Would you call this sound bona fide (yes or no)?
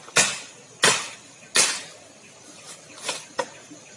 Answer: yes